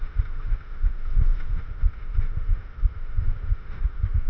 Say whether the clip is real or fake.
fake